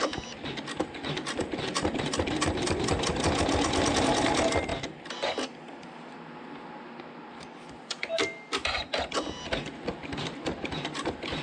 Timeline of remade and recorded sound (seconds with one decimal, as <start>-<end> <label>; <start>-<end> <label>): 0.0-11.4 recorded